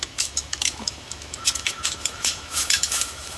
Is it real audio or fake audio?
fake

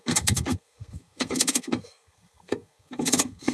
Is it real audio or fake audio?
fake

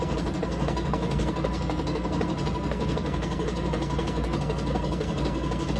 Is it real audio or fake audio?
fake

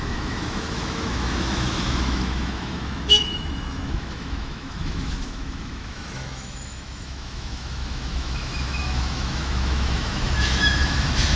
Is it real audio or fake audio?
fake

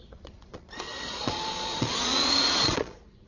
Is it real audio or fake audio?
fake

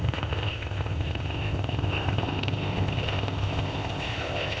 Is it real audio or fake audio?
fake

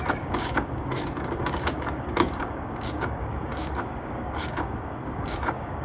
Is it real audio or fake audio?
fake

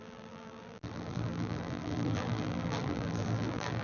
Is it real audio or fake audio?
fake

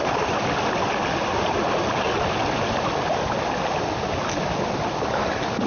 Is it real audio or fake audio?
real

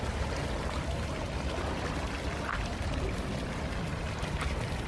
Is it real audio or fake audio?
real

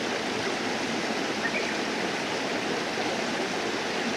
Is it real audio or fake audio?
real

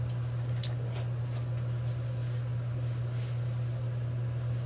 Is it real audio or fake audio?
real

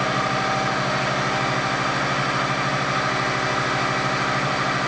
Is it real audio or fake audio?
real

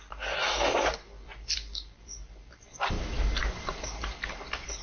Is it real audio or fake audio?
real